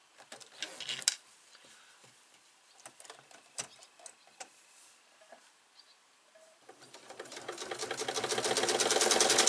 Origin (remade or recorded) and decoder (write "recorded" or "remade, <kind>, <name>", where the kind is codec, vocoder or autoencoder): recorded